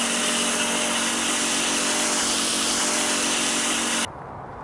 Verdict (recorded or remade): recorded